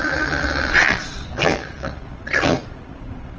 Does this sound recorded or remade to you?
remade